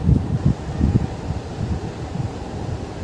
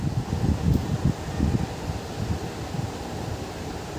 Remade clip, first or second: first